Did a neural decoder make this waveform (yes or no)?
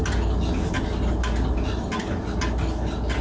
no